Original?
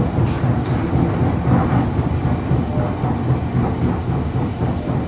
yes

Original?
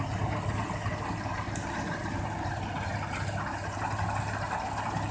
yes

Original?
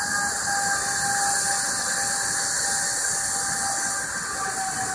yes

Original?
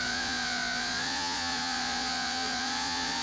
no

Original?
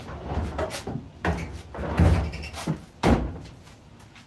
yes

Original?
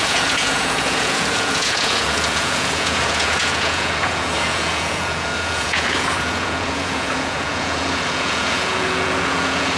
no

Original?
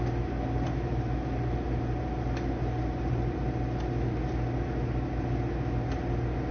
yes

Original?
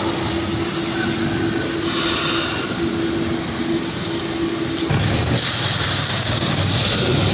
yes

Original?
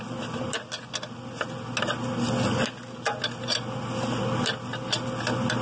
yes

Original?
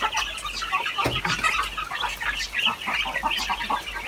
yes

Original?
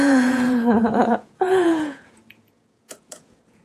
no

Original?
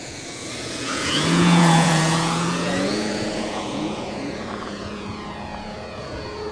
no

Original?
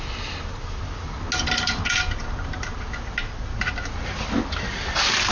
yes